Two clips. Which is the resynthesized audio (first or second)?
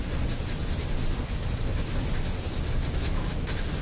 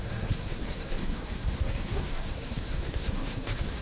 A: second